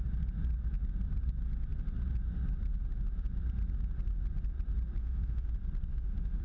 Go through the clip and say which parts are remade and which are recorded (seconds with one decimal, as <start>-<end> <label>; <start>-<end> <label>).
0.0-5.0 recorded; 5.0-5.5 remade; 5.5-5.9 recorded; 5.9-6.4 remade